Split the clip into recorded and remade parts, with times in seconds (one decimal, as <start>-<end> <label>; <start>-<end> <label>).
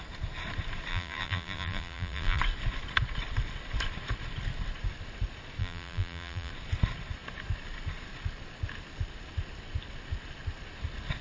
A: 0.0-0.9 recorded; 0.9-2.4 remade; 2.4-5.6 recorded; 5.6-6.5 remade; 6.5-11.2 recorded